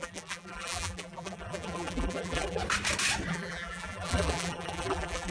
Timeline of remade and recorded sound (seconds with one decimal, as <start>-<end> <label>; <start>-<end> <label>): 0.0-2.6 remade; 2.6-3.3 recorded; 3.3-5.3 remade